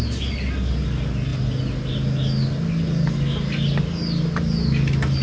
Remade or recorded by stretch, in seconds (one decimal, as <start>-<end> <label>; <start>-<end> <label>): 0.0-5.2 recorded